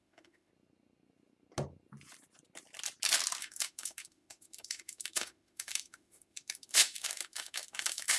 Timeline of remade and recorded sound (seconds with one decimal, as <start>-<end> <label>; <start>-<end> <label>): 0.0-0.5 remade; 0.5-3.4 recorded; 3.4-8.2 remade